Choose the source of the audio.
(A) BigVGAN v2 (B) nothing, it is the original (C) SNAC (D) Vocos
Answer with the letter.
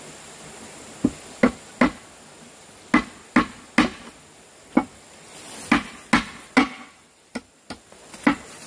B